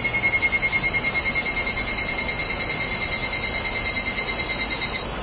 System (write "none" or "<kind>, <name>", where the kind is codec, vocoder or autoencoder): none